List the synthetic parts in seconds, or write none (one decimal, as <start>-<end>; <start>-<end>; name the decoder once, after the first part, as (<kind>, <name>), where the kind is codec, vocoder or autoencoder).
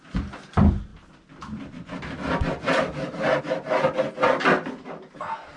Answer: none